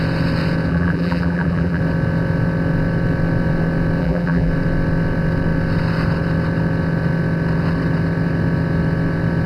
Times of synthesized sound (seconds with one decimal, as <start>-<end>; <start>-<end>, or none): 0.7-1.8; 4.0-4.5